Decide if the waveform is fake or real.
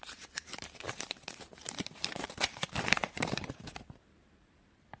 fake